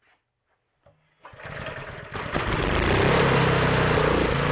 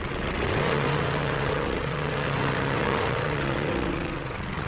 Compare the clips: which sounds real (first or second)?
first